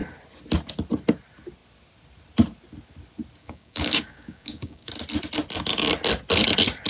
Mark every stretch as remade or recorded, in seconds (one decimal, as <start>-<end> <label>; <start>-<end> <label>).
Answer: 0.0-3.4 recorded; 3.4-4.9 remade; 4.9-6.9 recorded